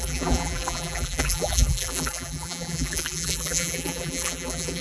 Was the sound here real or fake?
fake